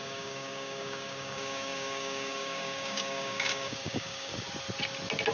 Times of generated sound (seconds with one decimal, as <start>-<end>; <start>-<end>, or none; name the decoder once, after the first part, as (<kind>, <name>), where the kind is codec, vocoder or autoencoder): 0.0-4.3 (codec, DAC)